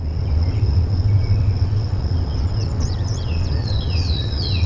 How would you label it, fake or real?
fake